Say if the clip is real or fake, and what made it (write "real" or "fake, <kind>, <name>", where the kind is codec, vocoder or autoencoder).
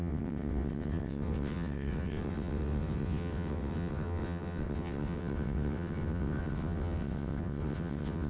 fake, vocoder, WaveNeXt